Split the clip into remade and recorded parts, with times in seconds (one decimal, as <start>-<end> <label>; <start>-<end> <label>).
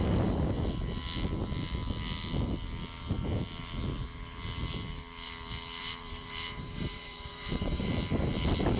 0.0-5.8 recorded; 5.8-7.9 remade; 7.9-8.8 recorded